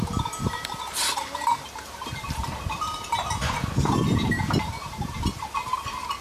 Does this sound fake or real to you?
fake